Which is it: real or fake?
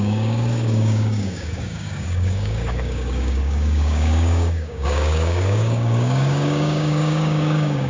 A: fake